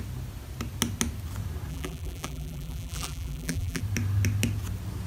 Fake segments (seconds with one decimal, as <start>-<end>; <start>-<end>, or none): 1.7-3.8